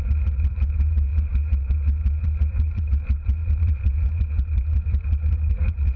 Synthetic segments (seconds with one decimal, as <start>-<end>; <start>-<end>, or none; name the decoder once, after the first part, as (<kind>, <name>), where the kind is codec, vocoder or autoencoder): 0.0-6.0 (vocoder, BigVGAN v2)